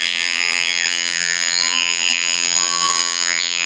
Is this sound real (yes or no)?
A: no